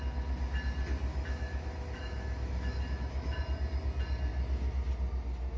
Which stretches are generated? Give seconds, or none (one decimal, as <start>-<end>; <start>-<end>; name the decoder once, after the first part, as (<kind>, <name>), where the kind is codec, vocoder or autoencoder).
1.1-3.4 (autoencoder, DAC-VAE)